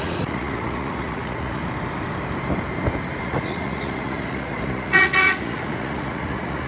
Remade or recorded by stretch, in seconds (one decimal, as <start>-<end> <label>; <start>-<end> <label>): 0.0-1.6 remade; 1.6-3.2 recorded; 3.2-6.7 remade